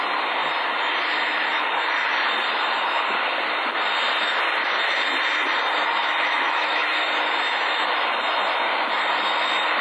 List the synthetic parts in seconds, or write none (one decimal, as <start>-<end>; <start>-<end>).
6.0-6.9